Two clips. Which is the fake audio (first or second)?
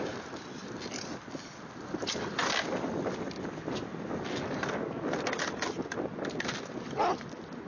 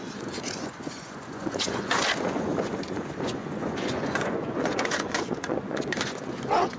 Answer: second